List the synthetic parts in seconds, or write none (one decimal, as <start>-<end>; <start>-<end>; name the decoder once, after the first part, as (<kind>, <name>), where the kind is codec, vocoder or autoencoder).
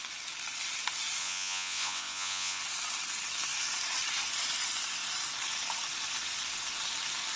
1.2-2.6 (vocoder, Vocos)